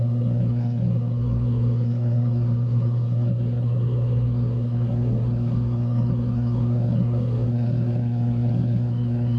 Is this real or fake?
fake